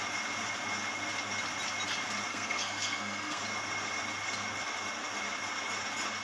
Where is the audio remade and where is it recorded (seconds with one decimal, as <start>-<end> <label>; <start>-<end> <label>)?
0.0-2.3 recorded; 2.3-3.4 remade; 3.4-6.2 recorded